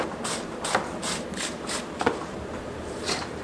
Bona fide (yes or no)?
no